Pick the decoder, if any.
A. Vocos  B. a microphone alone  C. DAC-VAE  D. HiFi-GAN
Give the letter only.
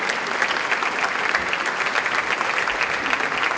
B